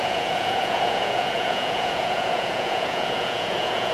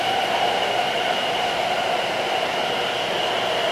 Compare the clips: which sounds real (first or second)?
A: second